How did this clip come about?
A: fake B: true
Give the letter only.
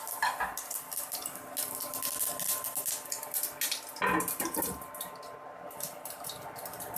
B